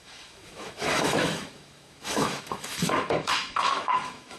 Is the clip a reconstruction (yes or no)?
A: yes